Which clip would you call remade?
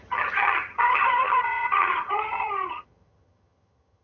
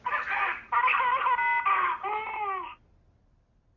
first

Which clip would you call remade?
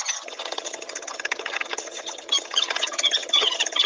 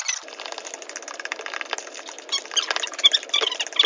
first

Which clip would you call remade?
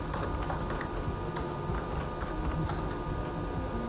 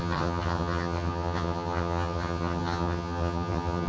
second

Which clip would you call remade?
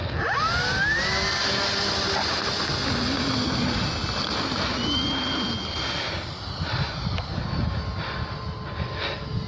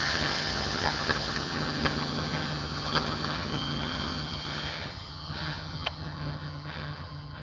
second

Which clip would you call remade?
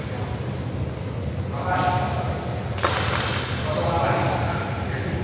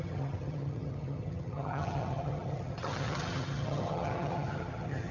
second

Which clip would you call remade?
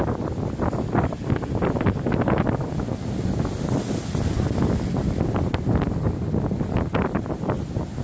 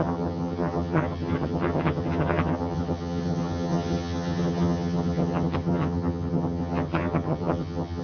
second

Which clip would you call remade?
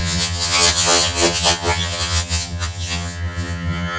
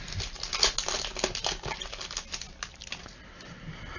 first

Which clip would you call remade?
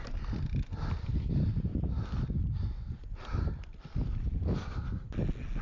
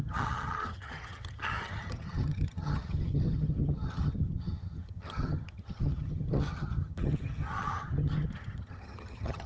second